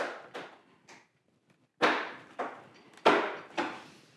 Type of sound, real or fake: real